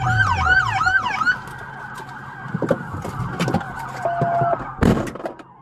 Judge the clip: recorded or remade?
recorded